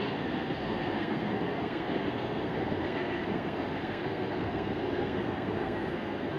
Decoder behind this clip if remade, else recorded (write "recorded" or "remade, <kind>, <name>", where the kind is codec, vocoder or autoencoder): remade, codec, SNAC